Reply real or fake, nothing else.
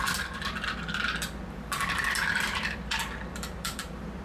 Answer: fake